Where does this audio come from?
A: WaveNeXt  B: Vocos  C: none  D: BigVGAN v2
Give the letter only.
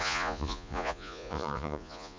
B